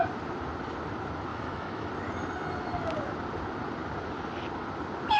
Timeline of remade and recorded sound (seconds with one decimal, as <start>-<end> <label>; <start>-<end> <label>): 0.0-1.3 recorded; 1.3-1.9 remade; 1.9-5.2 recorded